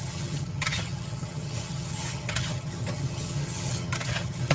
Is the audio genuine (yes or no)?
no